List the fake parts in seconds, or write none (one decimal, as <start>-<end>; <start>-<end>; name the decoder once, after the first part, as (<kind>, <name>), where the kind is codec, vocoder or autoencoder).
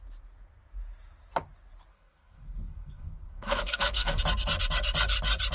1.9-4.2 (codec, SNAC)